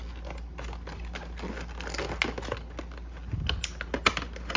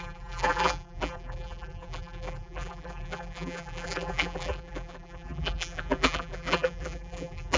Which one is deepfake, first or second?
second